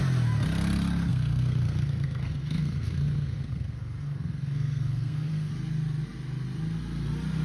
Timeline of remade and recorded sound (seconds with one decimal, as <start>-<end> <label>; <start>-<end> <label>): 0.0-1.1 recorded; 1.1-5.5 remade; 5.5-7.4 recorded